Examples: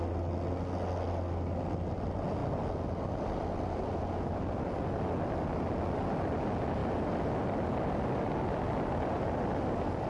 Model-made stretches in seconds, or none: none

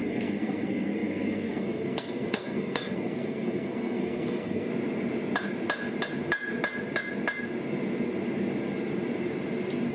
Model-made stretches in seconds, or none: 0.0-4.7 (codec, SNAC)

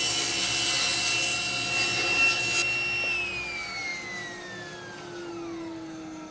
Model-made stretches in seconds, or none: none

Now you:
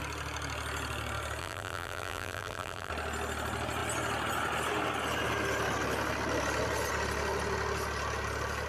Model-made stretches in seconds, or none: 1.4-2.9 (vocoder, BigVGAN v2)

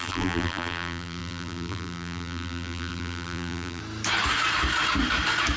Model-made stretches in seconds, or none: 0.0-3.8 (vocoder, BigVGAN v2)

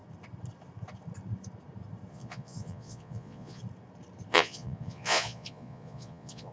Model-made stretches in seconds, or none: 2.1-3.6 (vocoder, Vocos); 4.3-6.5

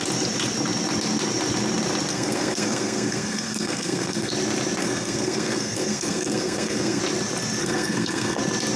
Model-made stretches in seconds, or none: 2.1-4.3 (codec, SNAC); 4.8-7.0; 7.6-8.4

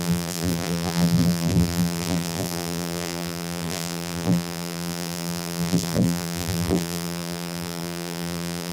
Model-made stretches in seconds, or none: 0.0-8.7 (vocoder, BigVGAN v2)